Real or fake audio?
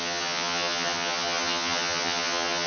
fake